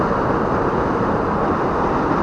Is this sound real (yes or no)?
yes